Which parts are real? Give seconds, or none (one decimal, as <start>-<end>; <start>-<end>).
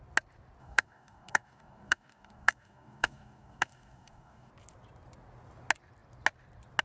0.0-0.6; 4.5-6.8